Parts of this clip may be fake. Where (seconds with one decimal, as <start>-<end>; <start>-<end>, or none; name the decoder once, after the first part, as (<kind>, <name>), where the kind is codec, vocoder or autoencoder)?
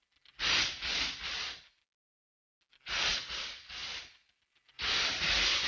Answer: none